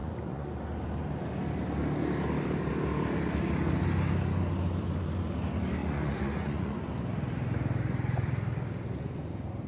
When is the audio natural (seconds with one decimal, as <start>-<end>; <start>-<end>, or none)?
0.5-5.8; 6.9-9.7